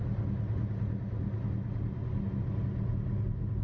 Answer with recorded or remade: recorded